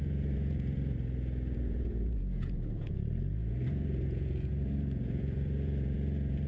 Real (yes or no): no